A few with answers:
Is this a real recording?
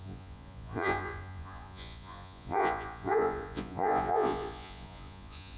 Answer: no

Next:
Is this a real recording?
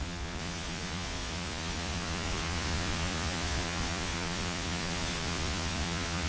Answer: no